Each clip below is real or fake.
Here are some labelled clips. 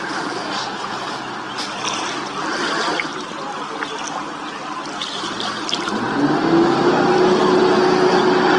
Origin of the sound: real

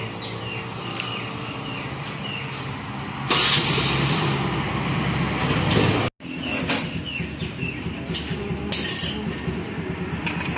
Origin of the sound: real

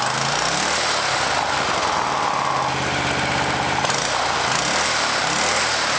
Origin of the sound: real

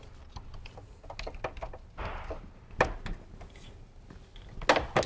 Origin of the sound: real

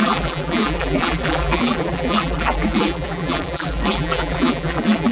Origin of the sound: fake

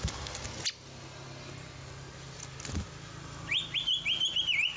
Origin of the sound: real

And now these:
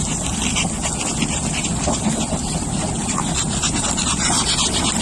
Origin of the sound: real